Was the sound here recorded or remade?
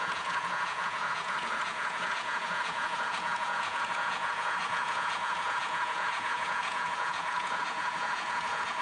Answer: remade